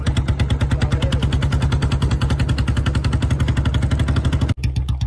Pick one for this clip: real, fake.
real